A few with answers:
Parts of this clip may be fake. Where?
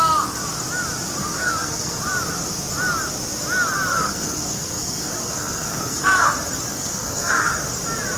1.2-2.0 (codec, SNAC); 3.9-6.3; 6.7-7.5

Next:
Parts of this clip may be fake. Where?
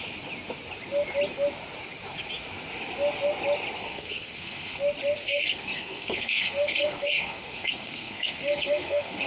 3.8-4.8 (codec, SNAC); 5.2-9.3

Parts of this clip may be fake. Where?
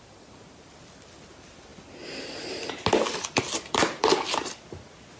none